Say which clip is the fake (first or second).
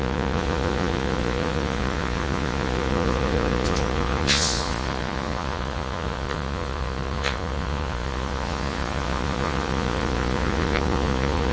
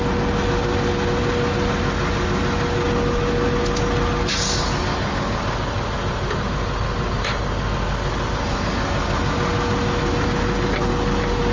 first